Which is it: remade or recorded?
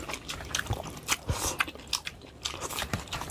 recorded